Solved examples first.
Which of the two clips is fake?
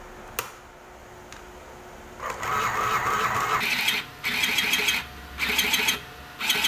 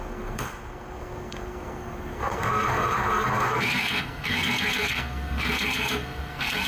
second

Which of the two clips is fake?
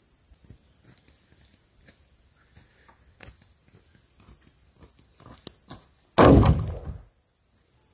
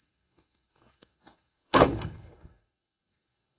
second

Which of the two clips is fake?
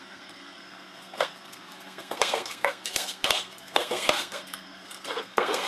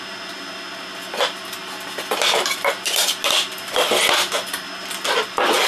first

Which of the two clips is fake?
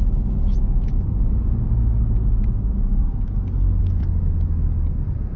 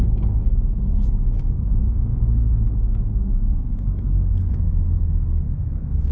second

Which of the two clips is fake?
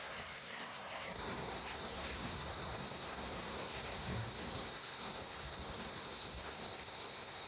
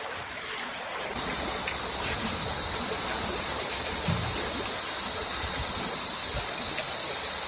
first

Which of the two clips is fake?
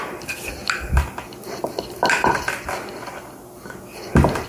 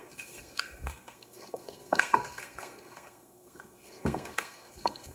second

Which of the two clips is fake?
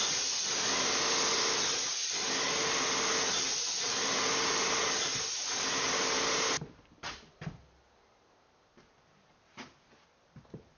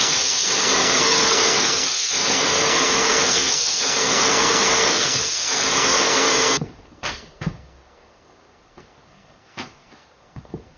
second